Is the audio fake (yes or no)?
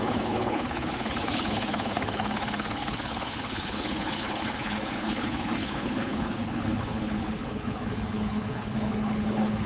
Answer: yes